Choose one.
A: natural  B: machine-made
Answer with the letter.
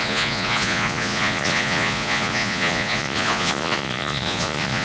B